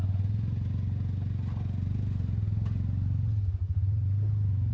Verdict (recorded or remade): recorded